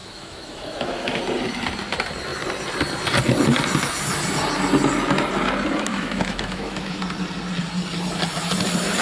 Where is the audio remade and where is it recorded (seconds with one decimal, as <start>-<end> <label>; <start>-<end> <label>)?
0.0-1.2 remade; 1.2-5.9 recorded; 5.9-7.0 remade; 7.0-9.0 recorded